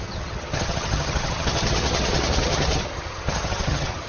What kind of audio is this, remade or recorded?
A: remade